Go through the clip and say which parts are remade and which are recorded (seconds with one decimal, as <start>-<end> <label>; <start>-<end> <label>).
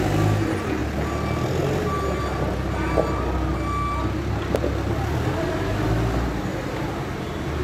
0.0-7.6 recorded